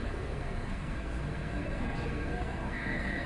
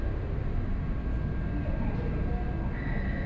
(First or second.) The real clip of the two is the second